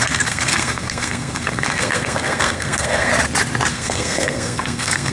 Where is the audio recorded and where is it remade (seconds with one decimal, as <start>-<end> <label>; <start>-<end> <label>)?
0.0-3.1 remade; 3.1-3.7 recorded; 3.7-5.1 remade